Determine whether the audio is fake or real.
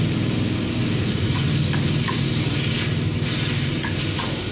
real